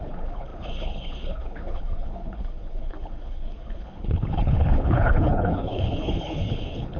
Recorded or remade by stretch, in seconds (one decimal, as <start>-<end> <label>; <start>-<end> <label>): 0.0-7.0 remade